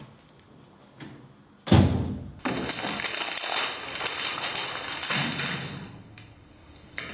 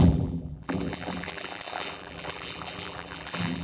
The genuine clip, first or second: first